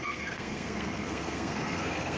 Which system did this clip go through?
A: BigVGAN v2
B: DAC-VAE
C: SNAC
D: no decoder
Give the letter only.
C